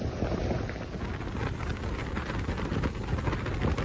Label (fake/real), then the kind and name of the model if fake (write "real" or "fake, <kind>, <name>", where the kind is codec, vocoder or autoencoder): real